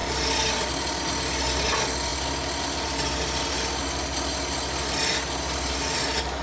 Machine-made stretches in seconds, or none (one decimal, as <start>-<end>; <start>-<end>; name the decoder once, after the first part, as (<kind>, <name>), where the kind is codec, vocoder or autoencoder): none